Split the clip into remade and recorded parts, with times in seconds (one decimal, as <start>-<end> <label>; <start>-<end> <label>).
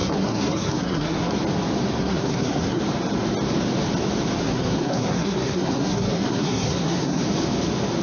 0.0-1.4 remade; 1.4-2.0 recorded; 2.0-2.8 remade; 2.8-4.4 recorded; 4.4-7.2 remade; 7.2-8.0 recorded